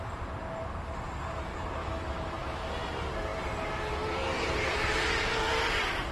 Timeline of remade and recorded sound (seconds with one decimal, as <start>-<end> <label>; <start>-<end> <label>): 0.0-1.8 recorded; 1.8-2.7 remade; 2.7-6.1 recorded